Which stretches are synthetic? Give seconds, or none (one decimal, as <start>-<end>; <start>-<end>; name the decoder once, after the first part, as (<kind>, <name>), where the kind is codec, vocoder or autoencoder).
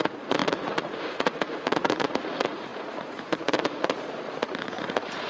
0.0-5.3 (vocoder, Vocos)